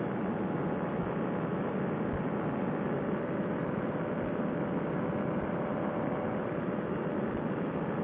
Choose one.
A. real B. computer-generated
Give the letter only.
A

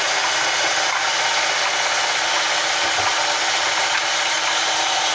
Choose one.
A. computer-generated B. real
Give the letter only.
B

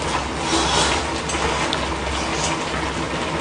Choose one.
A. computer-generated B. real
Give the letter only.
B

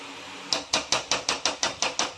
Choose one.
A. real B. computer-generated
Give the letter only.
A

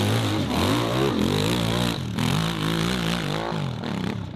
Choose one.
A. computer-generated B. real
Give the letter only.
B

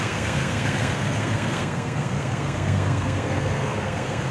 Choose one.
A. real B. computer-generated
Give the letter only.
B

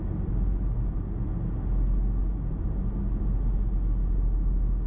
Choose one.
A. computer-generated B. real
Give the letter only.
B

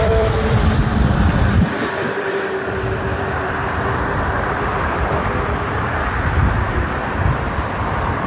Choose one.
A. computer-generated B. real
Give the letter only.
A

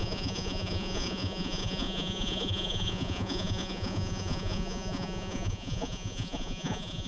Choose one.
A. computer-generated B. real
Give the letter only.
A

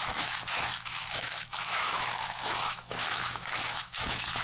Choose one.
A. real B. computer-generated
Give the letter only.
B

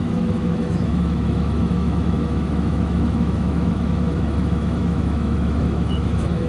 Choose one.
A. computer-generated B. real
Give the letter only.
A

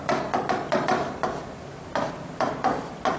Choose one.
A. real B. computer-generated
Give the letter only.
A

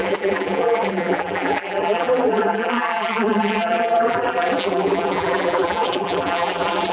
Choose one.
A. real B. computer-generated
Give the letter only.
B